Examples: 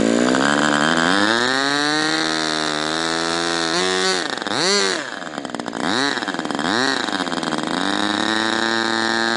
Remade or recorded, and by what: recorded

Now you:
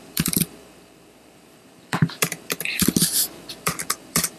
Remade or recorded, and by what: remade, vocoder, BigVGAN v2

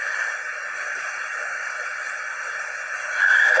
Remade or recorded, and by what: recorded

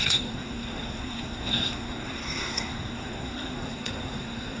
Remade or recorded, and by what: remade, codec, SNAC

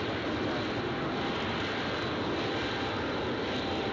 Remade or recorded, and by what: recorded